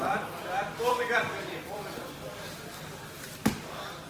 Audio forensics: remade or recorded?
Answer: remade